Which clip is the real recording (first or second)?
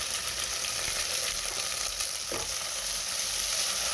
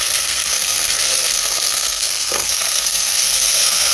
first